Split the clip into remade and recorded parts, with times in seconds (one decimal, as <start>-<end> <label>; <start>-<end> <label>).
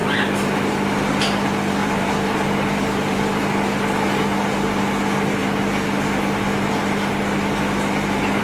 0.0-1.8 recorded; 1.8-3.4 remade; 3.4-8.4 recorded